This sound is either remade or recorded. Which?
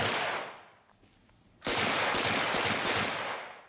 recorded